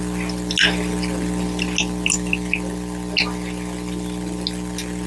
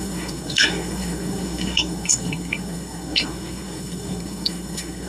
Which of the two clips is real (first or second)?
first